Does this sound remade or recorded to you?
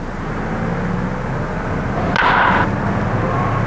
recorded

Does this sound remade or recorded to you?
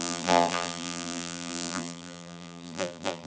remade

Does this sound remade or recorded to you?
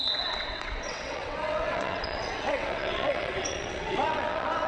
remade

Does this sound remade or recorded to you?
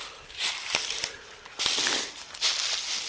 recorded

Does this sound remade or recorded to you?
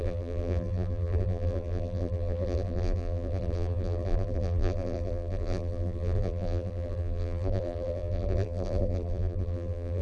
remade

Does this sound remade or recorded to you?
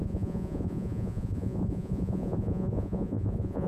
remade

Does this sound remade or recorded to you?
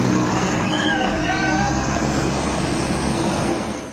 remade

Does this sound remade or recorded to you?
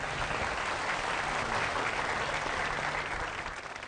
recorded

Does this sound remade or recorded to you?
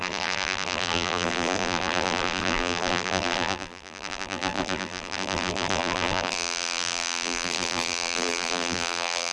remade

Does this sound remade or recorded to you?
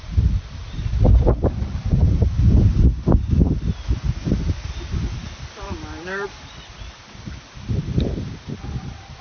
recorded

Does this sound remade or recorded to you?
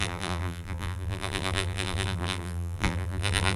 remade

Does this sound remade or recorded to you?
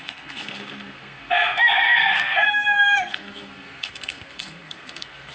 remade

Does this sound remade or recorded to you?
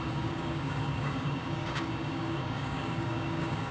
remade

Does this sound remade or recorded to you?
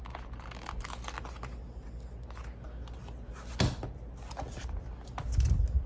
recorded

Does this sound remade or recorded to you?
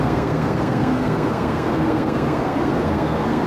remade